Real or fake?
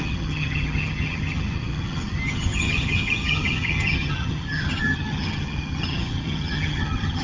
fake